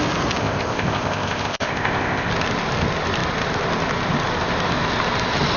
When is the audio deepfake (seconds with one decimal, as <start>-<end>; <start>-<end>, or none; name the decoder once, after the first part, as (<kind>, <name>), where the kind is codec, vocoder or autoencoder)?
0.4-2.3 (codec, ZipCodec)